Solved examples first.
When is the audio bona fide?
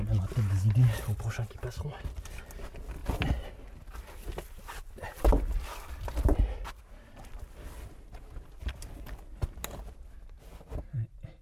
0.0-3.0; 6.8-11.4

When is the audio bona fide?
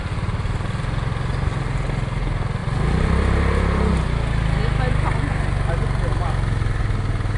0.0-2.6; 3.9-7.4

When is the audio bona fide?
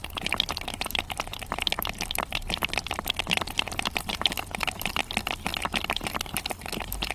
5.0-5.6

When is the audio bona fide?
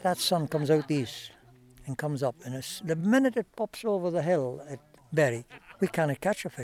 0.9-6.6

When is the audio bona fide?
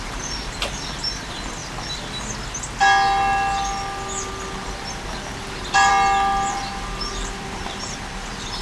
1.6-4.9; 5.9-6.5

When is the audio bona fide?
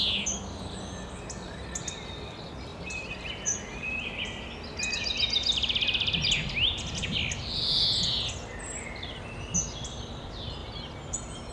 0.0-2.7; 4.2-10.6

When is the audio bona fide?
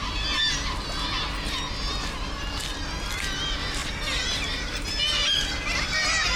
0.0-3.8; 4.9-6.4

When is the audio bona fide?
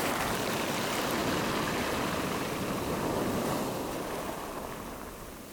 0.0-1.2; 4.5-5.5